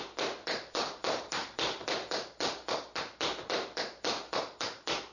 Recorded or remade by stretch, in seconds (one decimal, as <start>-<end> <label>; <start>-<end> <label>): 0.0-5.1 recorded